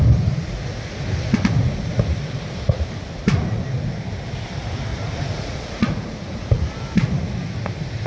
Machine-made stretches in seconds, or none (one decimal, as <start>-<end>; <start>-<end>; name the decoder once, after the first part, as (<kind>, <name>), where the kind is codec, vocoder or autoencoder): 4.9-6.5 (vocoder, Vocos)